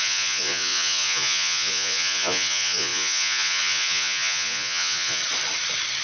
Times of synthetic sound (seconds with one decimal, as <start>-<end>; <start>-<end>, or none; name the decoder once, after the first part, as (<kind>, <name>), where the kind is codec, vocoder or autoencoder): 0.0-5.2 (vocoder, Vocos)